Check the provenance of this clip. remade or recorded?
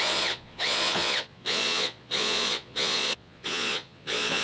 remade